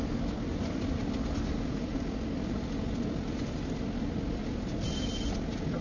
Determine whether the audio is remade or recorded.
recorded